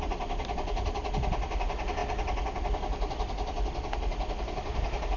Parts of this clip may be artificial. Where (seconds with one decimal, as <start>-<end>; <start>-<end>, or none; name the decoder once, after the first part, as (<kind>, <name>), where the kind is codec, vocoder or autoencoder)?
none